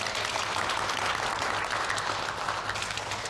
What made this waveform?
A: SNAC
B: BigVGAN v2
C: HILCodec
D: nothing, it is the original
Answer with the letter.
D